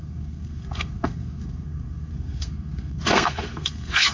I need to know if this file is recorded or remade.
remade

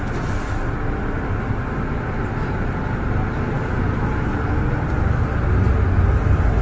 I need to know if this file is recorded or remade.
recorded